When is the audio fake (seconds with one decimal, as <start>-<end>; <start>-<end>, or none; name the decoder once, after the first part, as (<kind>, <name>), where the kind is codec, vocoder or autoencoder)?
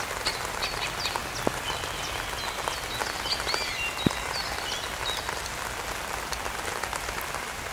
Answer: none